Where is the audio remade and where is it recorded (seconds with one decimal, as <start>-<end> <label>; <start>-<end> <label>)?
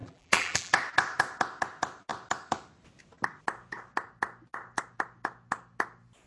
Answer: 0.0-0.7 remade; 0.7-6.3 recorded